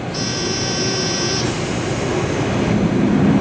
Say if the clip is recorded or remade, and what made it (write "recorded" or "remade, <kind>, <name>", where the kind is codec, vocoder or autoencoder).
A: recorded